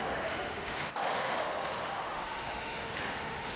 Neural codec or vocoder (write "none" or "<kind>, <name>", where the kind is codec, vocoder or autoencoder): autoencoder, DAC-VAE